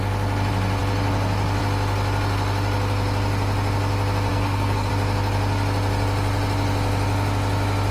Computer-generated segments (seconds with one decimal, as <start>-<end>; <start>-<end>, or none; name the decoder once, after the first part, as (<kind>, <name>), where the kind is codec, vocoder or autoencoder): 4.3-4.9 (codec, SNAC)